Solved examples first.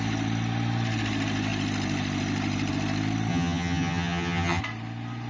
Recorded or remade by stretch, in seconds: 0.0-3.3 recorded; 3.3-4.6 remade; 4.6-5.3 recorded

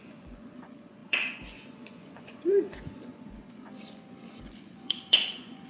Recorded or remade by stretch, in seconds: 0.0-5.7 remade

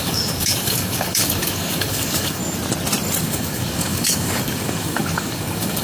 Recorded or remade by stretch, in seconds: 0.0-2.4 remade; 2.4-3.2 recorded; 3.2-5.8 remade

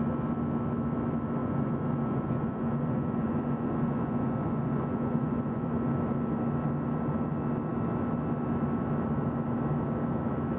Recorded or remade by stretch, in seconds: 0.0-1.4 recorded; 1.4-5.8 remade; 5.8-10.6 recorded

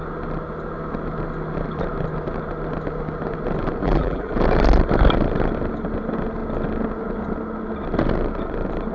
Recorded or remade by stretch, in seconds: 0.0-3.8 recorded; 3.8-4.3 remade; 4.3-8.9 recorded